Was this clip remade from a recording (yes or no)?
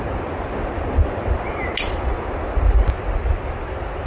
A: no